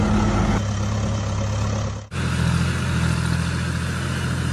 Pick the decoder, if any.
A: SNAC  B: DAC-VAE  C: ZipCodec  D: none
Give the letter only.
D